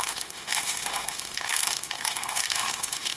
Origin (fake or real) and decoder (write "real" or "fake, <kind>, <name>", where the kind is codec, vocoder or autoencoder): fake, autoencoder, DAC-VAE